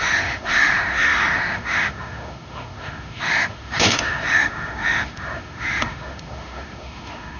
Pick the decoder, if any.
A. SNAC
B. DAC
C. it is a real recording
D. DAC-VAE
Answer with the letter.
D